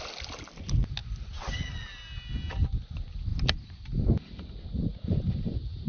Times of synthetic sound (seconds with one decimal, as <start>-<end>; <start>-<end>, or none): none